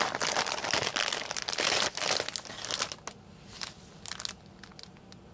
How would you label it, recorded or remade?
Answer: recorded